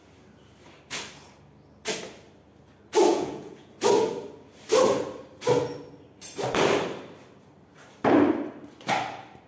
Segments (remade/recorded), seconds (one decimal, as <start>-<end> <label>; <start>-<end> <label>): 0.0-3.1 recorded; 3.1-3.7 remade; 3.7-9.5 recorded